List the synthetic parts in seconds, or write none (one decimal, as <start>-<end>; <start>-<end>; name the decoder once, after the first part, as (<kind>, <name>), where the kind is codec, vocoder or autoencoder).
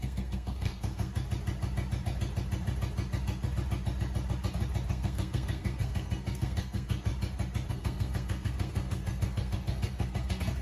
0.0-1.1 (codec, SNAC); 4.9-7.1; 7.7-10.6